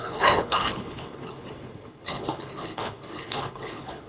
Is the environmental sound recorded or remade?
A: remade